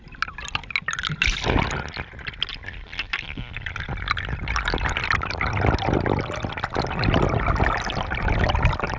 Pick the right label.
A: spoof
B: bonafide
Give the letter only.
B